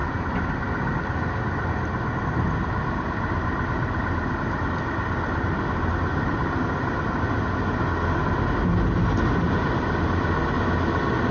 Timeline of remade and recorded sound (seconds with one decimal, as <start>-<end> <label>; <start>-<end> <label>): 0.0-11.3 recorded